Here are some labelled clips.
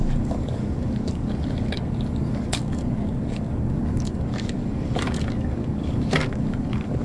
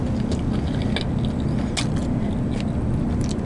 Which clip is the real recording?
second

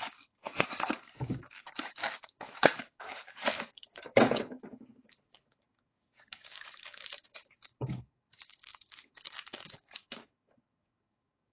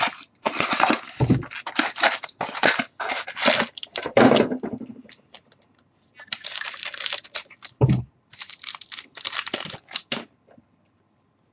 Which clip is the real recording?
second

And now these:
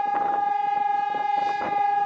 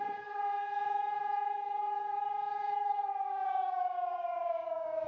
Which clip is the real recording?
first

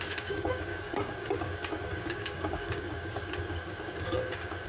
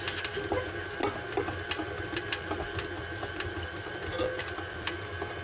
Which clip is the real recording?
second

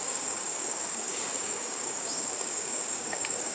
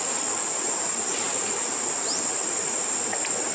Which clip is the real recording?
second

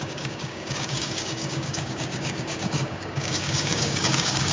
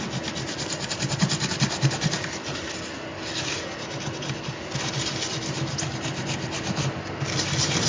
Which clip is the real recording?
second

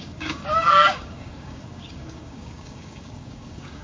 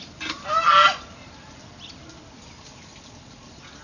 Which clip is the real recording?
second